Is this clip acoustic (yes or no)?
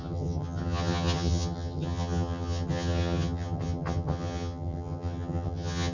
no